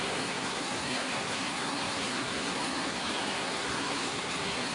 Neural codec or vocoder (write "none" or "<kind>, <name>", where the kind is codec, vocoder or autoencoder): codec, SNAC